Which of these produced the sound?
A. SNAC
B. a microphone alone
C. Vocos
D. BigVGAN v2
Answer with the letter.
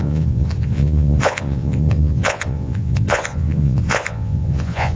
C